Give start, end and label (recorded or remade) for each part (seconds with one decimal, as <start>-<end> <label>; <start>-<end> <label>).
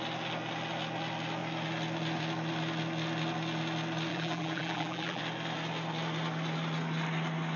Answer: 0.0-4.1 recorded; 4.1-5.2 remade; 5.2-7.6 recorded